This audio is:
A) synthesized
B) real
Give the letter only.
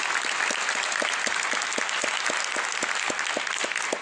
B